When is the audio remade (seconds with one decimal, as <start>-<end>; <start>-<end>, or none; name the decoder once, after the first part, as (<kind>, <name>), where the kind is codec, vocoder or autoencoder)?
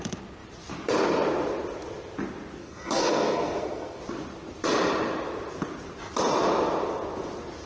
2.6-4.0 (codec, SNAC)